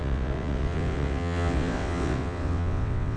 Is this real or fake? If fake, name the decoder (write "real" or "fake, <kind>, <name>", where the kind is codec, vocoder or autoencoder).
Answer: fake, vocoder, WaveNeXt